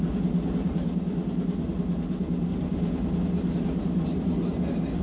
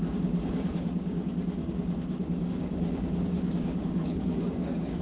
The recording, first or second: first